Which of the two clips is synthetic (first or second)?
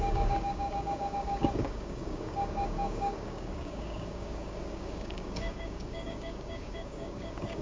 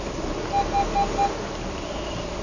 first